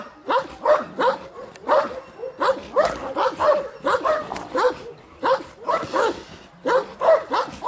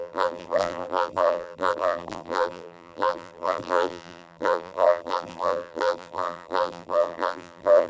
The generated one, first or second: second